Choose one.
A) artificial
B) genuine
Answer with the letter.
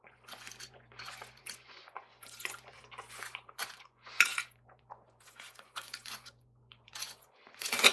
A